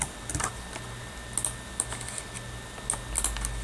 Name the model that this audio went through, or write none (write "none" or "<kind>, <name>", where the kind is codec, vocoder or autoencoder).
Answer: none